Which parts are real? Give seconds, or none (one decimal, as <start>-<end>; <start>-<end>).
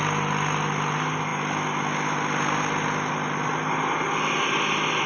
0.0-5.1